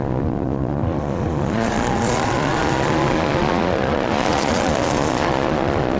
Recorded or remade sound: remade